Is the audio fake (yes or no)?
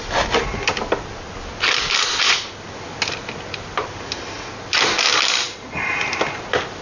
no